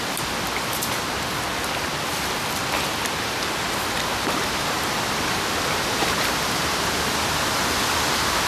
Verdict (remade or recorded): recorded